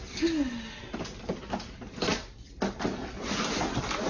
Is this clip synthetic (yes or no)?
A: no